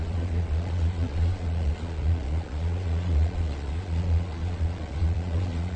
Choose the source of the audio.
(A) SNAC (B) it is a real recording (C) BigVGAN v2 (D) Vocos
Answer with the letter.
D